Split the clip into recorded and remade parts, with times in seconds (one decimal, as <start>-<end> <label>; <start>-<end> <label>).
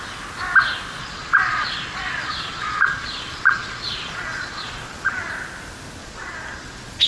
0.0-1.0 recorded; 1.0-5.3 remade; 5.3-6.0 recorded; 6.0-7.1 remade